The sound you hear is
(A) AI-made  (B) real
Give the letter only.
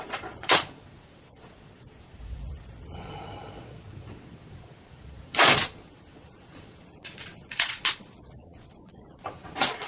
A